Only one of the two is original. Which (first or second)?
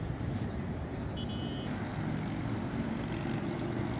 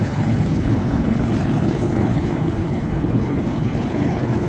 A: first